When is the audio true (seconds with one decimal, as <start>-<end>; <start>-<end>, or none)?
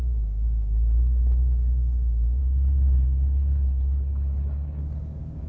0.0-2.4; 4.8-5.5